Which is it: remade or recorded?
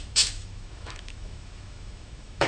remade